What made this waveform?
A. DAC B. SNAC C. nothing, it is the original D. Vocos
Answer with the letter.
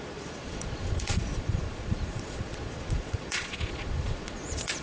D